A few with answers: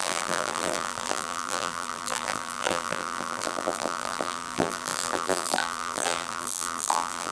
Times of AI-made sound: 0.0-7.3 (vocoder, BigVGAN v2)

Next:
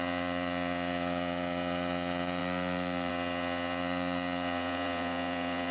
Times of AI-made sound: 0.0-2.4 (vocoder, Vocos); 3.1-5.7